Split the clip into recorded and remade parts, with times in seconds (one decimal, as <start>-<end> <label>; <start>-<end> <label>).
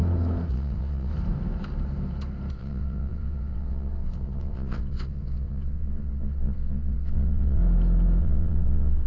0.0-0.5 recorded; 0.5-1.1 remade; 1.1-2.5 recorded; 2.5-7.6 remade; 7.6-8.2 recorded; 8.2-9.1 remade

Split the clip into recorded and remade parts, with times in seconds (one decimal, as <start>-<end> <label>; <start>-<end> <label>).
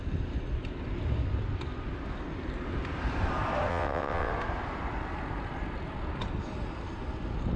0.0-3.7 recorded; 3.7-4.3 remade; 4.3-7.6 recorded